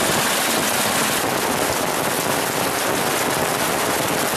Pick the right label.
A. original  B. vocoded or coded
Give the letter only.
A